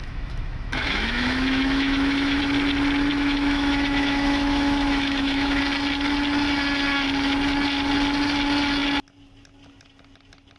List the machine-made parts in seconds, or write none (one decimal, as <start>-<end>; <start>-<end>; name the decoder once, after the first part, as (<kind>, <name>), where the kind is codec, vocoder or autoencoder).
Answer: 0.0-2.4 (autoencoder, DAC-VAE); 3.1-5.6